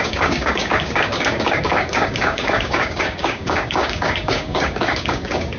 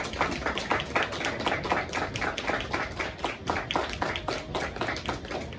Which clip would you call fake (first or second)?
first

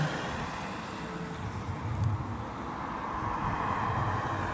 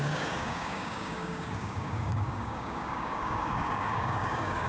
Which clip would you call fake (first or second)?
second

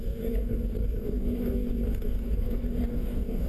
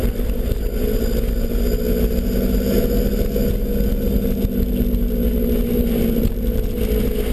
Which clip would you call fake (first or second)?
first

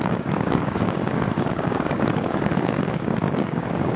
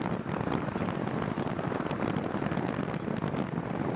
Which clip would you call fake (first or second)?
first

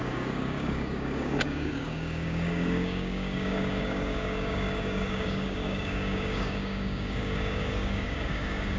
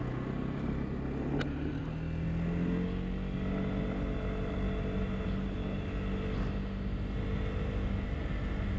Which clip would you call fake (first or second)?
first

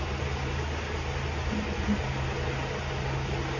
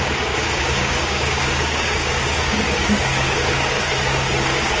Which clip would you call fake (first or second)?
second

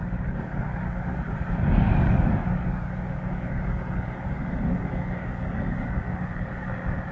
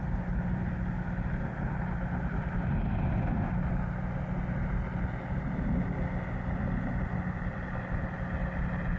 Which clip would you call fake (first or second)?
first